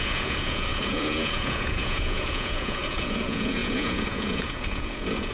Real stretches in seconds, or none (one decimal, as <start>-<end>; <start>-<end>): none